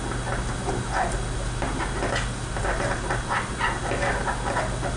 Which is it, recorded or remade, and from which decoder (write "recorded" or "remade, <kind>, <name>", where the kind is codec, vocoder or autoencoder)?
recorded